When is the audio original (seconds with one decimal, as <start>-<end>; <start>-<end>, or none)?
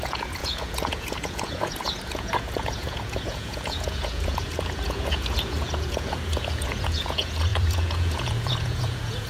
none